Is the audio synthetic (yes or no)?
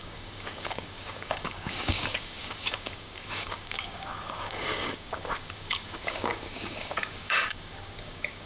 yes